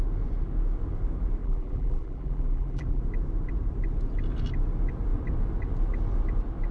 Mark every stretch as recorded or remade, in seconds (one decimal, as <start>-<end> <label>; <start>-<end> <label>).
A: 0.0-1.4 recorded; 1.4-3.0 remade; 3.0-6.7 recorded